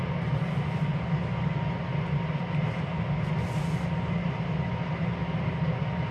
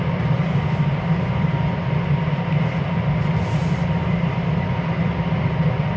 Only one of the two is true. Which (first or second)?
first